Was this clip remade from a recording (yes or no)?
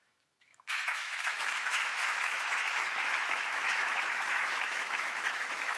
yes